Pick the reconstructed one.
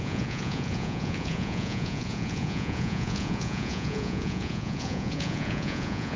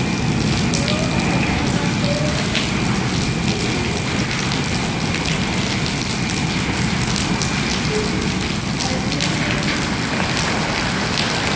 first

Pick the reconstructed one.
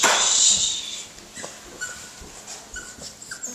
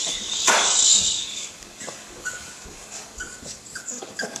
second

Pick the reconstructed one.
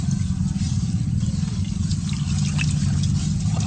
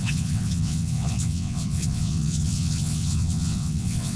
second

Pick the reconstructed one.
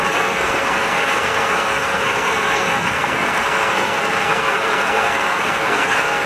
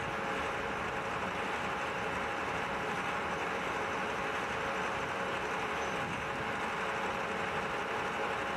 first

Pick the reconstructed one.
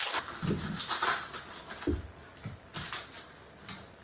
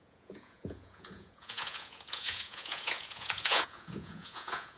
second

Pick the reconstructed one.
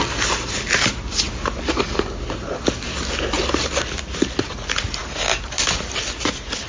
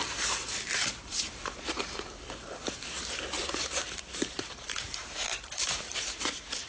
second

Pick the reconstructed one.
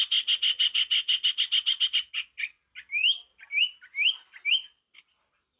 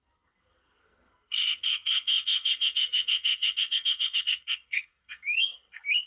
second